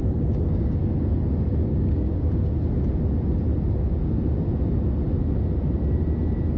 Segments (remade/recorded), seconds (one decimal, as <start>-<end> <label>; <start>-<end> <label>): 0.0-0.8 remade; 0.8-1.7 recorded; 1.7-2.3 remade; 2.3-6.6 recorded